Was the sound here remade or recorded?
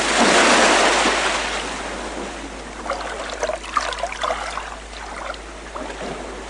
recorded